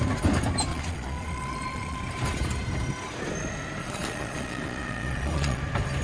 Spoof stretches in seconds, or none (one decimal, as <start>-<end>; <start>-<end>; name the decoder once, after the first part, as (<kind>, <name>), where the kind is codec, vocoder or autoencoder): 0.7-2.0 (vocoder, Vocos); 3.8-5.6